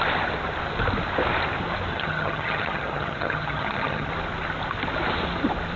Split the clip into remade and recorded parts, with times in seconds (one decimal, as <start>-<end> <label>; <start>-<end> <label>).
0.0-1.9 recorded; 1.9-4.1 remade; 4.1-5.8 recorded

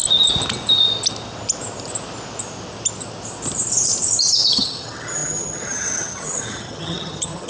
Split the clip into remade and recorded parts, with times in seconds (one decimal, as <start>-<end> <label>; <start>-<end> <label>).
0.0-4.5 recorded; 4.5-7.5 remade

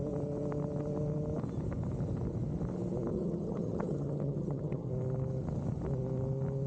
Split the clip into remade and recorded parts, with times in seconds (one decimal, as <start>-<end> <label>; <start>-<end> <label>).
0.0-3.1 recorded; 3.1-4.9 remade; 4.9-6.7 recorded

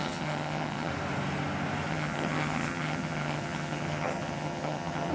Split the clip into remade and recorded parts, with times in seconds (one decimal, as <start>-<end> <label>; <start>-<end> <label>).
0.0-0.9 remade; 0.9-1.9 recorded; 1.9-5.1 remade

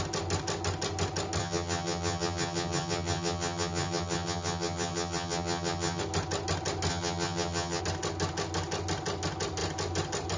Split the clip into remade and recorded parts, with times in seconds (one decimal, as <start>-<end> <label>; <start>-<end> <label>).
0.0-1.4 recorded; 1.4-6.0 remade; 6.0-6.9 recorded; 6.9-7.8 remade; 7.8-10.4 recorded

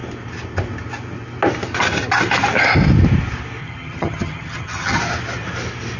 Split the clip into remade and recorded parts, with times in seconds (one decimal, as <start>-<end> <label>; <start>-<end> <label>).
0.0-3.6 recorded; 3.6-5.0 remade; 5.0-6.0 recorded

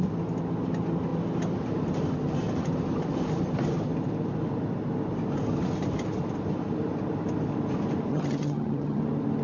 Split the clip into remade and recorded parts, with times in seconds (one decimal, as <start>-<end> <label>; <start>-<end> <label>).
0.0-8.1 recorded; 8.1-9.0 remade; 9.0-9.4 recorded